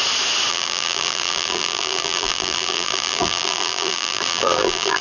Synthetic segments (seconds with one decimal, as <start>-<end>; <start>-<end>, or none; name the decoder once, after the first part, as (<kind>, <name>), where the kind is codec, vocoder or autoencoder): 0.5-5.0 (vocoder, BigVGAN v2)